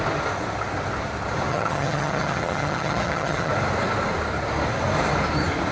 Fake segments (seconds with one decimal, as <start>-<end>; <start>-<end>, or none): 1.5-3.5